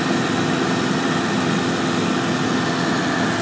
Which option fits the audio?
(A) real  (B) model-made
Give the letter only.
A